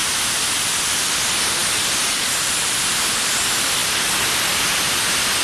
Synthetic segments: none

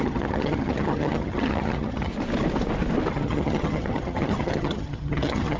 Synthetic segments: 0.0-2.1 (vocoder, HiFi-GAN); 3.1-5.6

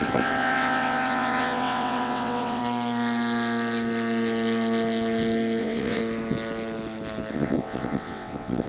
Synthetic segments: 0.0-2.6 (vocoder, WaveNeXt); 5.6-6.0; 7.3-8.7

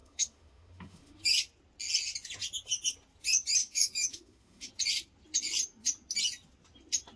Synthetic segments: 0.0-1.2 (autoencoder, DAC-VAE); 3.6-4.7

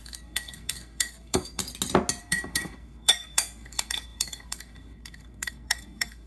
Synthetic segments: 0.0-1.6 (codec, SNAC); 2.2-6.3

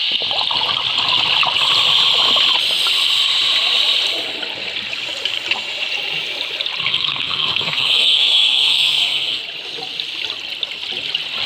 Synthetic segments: 6.9-9.4 (codec, SNAC)

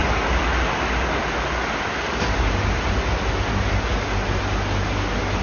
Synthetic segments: none